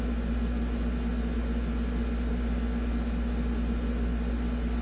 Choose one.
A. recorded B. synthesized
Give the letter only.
A